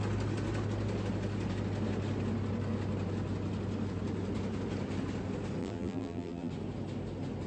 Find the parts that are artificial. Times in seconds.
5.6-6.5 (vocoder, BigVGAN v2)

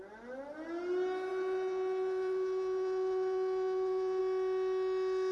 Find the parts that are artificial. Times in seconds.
1.3-4.2 (vocoder, Vocos)

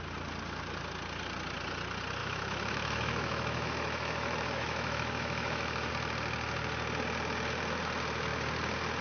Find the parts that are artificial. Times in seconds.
2.2-5.9 (autoencoder, DAC-VAE)

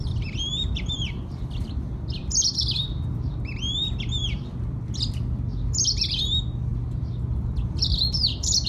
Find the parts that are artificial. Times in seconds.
0.0-2.2 (vocoder, BigVGAN v2); 6.2-6.7; 7.3-8.7

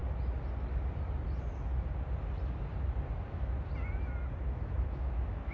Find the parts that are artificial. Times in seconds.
3.3-3.7 (autoencoder, DAC-VAE); 4.4-5.5